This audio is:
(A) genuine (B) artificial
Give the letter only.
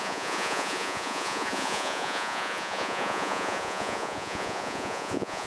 B